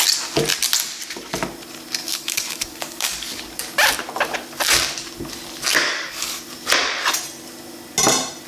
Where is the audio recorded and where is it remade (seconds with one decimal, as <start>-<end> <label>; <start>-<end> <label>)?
0.0-2.0 recorded; 2.0-3.4 remade; 3.4-5.7 recorded; 5.7-6.3 remade; 6.3-8.5 recorded